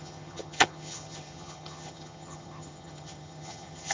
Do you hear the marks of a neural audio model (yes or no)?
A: yes